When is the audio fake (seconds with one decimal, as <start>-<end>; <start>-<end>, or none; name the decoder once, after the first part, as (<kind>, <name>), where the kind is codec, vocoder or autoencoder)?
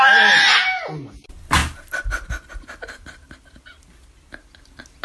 none